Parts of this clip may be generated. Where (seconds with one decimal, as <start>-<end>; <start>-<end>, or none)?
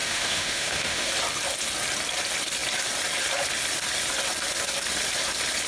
0.0-1.1